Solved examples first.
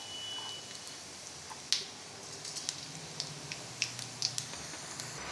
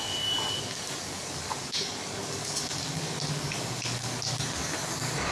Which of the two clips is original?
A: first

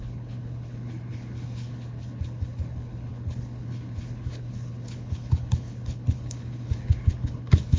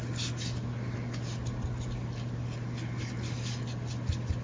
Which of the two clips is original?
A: second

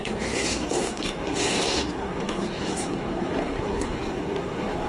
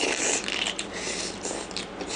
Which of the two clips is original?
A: second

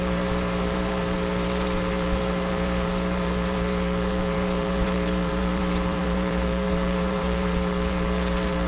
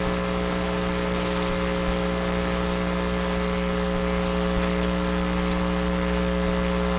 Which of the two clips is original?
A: second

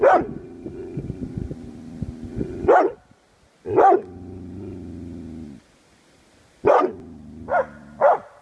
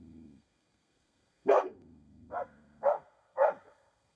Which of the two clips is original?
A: first